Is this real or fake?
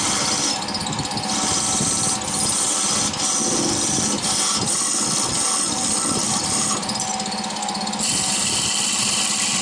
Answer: real